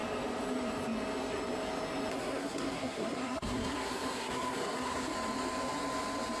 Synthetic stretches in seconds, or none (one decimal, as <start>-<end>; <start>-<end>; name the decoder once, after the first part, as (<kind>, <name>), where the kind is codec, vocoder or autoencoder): 2.1-5.1 (codec, SNAC)